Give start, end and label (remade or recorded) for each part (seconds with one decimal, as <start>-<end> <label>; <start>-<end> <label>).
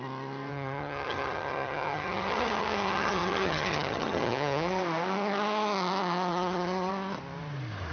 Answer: 0.0-0.5 recorded; 0.5-4.8 remade; 4.8-6.3 recorded; 6.3-6.9 remade; 6.9-7.9 recorded